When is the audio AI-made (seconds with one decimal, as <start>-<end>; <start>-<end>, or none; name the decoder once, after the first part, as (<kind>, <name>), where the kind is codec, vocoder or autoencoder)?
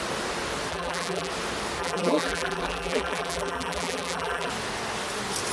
0.7-1.3 (vocoder, BigVGAN v2); 1.8-4.5